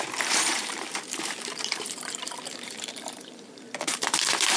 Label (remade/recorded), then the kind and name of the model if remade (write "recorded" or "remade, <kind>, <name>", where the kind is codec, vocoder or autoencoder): remade, vocoder, BigVGAN v2